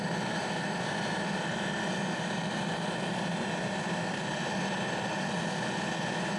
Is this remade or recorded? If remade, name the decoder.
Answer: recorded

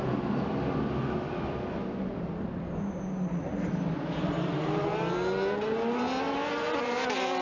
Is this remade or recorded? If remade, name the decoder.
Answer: recorded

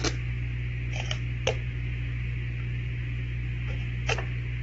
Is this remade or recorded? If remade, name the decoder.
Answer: recorded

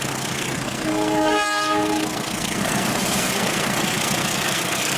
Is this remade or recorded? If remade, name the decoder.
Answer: remade, codec, SNAC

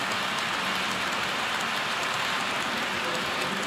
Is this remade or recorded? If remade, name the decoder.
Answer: recorded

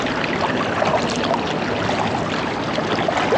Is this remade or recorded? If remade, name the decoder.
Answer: recorded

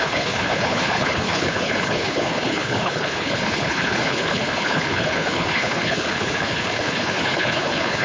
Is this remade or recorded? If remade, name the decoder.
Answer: remade, codec, HILCodec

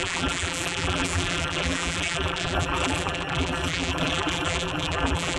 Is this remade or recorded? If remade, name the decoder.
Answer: remade, vocoder, BigVGAN v2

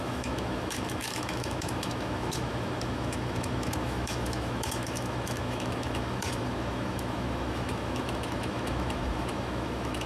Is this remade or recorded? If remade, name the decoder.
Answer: remade, autoencoder, DAC-VAE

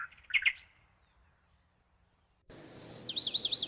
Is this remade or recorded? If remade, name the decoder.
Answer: recorded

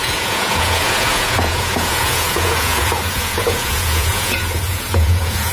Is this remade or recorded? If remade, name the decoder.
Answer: remade, vocoder, Vocos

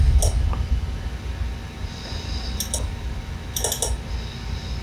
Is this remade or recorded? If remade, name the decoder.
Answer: recorded